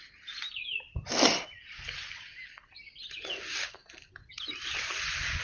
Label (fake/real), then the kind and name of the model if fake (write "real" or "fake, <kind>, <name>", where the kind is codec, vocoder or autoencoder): real